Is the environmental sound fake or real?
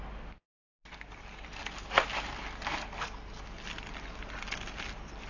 real